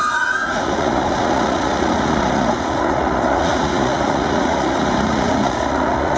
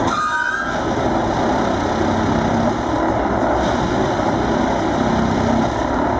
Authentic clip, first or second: second